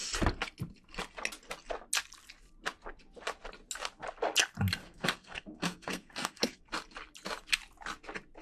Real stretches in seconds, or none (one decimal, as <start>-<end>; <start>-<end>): 0.0-4.8; 6.6-8.4